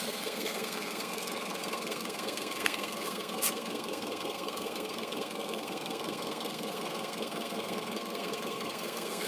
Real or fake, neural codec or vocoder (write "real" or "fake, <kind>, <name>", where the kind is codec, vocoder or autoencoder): fake, codec, SNAC